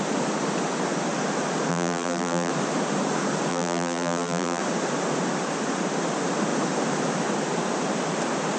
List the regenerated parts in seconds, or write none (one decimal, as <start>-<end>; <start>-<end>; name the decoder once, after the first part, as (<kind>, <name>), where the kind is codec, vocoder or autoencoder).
1.7-2.5 (vocoder, BigVGAN v2); 3.5-4.6